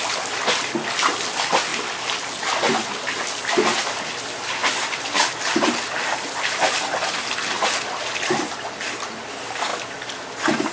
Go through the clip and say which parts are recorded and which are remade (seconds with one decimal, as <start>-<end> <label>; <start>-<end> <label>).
0.0-10.7 recorded